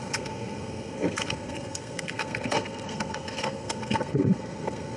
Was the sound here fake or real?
fake